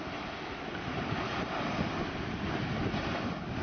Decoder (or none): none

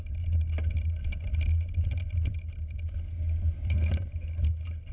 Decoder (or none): none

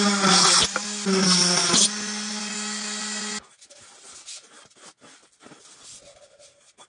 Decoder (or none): none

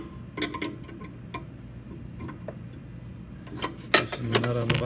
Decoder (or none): none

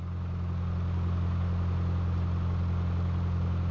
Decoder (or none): none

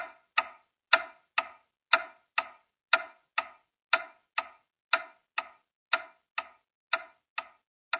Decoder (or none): none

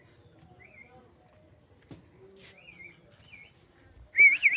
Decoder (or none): none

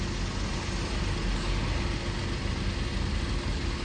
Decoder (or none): none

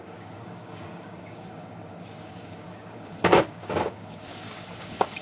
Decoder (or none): codec, DAC